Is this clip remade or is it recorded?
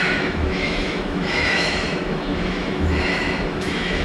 remade